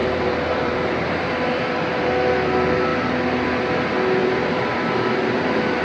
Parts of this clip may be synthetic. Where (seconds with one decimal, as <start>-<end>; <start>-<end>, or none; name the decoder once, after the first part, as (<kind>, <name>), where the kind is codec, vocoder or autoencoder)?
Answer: 0.0-2.0 (vocoder, BigVGAN v2); 4.2-5.8